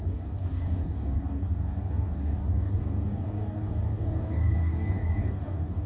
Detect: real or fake fake